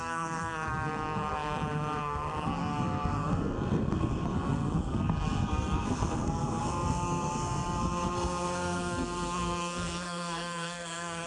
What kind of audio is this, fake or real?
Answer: fake